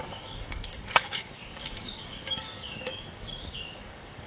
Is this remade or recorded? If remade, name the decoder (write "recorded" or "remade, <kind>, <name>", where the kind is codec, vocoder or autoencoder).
remade, codec, DAC